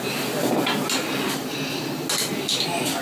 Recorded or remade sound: recorded